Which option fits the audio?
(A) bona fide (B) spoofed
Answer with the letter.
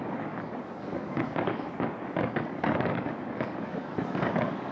B